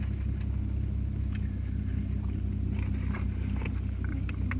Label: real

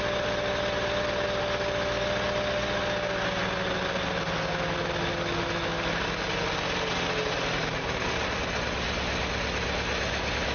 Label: real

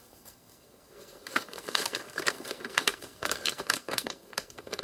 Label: fake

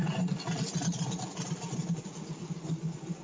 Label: real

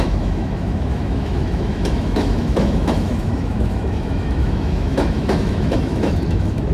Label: fake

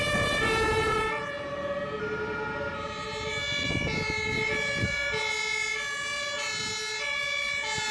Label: real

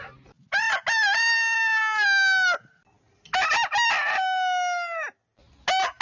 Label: real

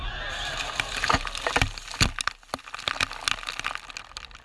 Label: real